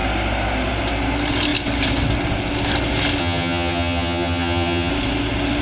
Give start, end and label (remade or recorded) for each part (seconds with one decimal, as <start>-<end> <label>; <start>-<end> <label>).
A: 0.0-3.2 recorded; 3.2-4.9 remade; 4.9-5.6 recorded